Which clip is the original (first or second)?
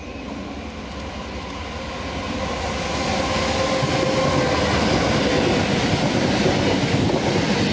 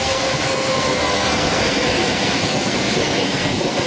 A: first